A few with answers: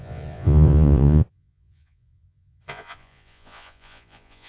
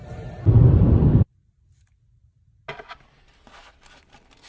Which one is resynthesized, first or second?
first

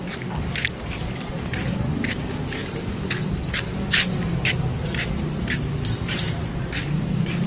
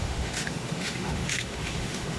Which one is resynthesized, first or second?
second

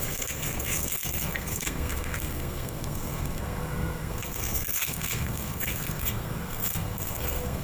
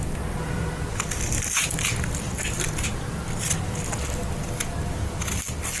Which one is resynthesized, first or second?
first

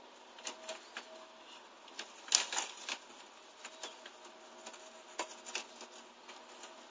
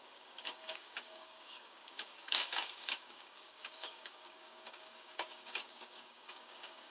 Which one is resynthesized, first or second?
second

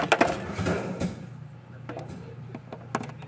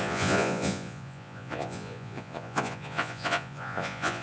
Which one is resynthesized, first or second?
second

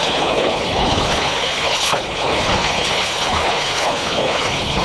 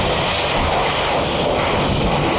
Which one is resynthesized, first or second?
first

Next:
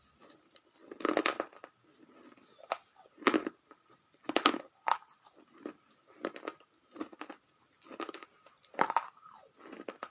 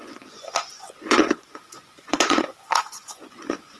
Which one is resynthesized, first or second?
second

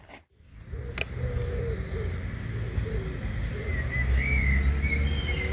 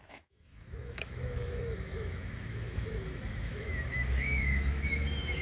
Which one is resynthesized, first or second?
second